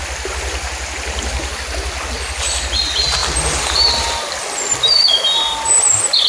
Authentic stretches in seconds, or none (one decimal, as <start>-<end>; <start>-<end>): 1.5-3.2; 5.7-6.3